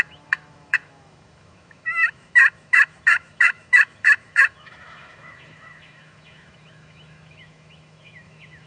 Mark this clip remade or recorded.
remade